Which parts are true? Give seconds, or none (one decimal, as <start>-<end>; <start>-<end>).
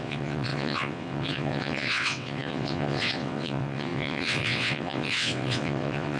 none